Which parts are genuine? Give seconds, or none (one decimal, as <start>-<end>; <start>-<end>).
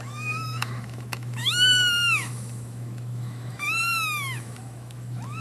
none